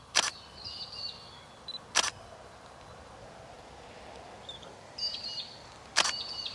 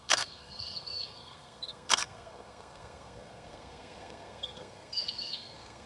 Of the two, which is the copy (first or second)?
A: second